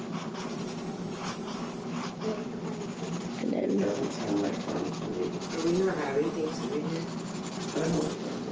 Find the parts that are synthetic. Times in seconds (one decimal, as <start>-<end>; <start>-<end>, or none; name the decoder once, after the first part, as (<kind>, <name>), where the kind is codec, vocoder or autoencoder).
none